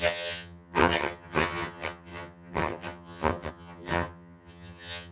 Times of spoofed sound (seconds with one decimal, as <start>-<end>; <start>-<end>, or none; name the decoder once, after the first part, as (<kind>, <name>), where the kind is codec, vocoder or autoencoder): 0.0-5.1 (vocoder, HiFi-GAN)